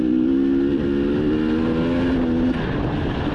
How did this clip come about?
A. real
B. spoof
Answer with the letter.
A